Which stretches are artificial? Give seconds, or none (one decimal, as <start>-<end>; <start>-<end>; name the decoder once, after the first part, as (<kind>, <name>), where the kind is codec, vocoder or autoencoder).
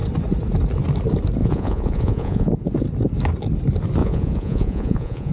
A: 1.4-2.5 (vocoder, Vocos); 4.0-5.3